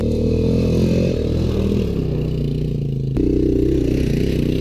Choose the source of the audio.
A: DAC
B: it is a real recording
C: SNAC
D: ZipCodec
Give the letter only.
B